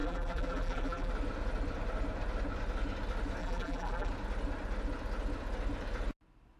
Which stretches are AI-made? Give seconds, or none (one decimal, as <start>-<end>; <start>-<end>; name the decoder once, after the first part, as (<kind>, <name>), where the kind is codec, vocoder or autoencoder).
0.0-1.1 (vocoder, BigVGAN v2); 3.4-4.1